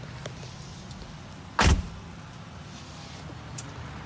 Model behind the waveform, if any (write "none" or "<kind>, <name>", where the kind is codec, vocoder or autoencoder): none